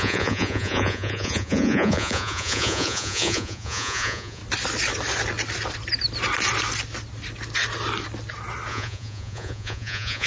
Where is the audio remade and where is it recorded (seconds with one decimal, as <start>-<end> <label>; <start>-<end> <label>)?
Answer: 0.0-4.4 remade; 4.4-8.7 recorded; 8.7-10.3 remade